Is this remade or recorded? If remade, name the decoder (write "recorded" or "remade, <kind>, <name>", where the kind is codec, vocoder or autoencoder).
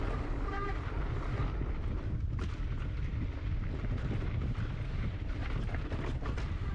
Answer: recorded